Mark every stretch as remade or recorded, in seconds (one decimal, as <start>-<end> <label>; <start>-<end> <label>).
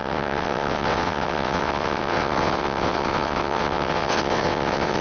0.0-5.0 remade